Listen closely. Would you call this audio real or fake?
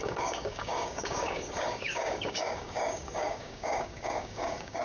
fake